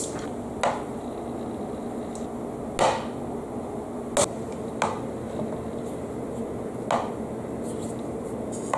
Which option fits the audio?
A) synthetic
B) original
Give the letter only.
B